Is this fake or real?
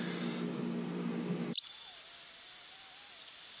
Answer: real